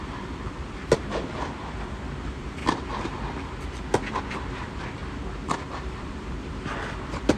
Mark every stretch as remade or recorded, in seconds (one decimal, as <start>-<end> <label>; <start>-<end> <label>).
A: 0.0-2.6 remade; 2.6-4.2 recorded; 4.2-5.0 remade; 5.0-5.7 recorded; 5.7-7.4 remade